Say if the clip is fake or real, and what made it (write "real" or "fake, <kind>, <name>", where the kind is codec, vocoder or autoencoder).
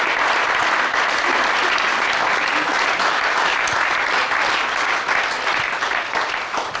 real